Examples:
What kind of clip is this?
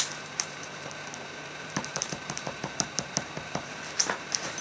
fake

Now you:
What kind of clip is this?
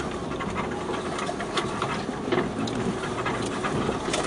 real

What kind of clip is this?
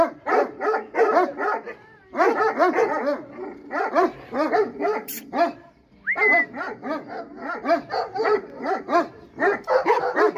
real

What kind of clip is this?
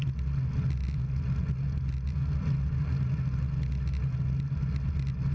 real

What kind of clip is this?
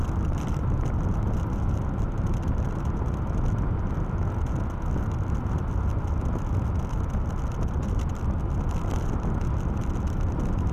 real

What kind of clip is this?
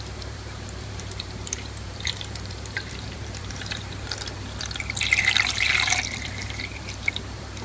fake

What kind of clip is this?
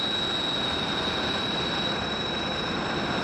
real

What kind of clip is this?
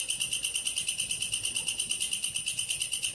real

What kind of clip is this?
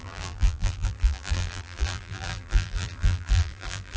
fake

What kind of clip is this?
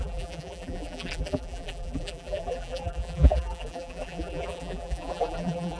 fake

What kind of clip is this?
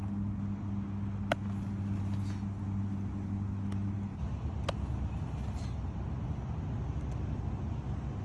real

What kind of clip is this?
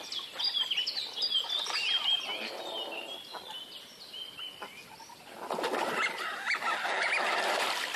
real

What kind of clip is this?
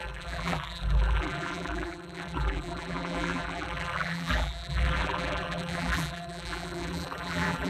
fake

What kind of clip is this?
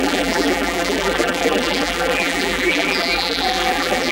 fake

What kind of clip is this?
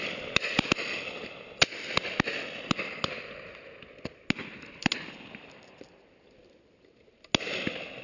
real